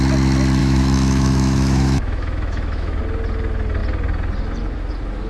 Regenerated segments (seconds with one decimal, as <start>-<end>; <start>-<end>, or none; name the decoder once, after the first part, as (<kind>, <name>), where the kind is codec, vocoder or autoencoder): 0.6-3.0 (autoencoder, DAC-VAE)